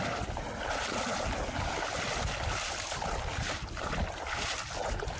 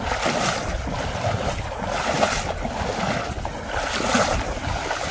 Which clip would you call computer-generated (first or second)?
second